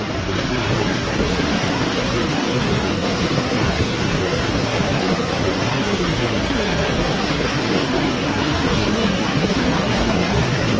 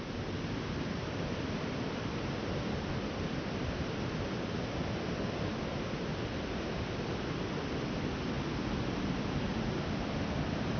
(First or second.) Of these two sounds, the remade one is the first